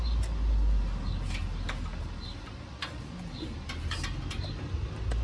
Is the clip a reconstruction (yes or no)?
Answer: no